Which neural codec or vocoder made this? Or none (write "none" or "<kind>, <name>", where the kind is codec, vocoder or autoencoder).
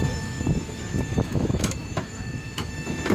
autoencoder, DAC-VAE